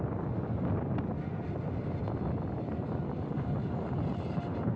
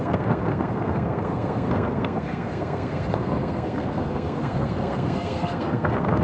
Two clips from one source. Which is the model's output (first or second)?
second